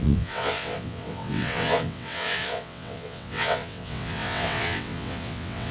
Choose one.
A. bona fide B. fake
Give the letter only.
B